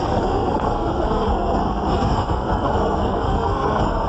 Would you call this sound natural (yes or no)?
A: no